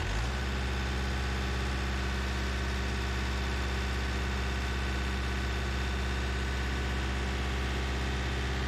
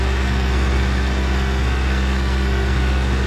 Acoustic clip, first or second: first